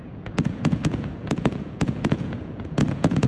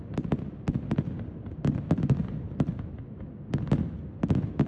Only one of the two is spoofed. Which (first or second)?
first